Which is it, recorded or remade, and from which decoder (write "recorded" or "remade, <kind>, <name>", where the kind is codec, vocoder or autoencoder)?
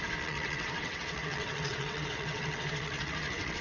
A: remade, vocoder, WaveNeXt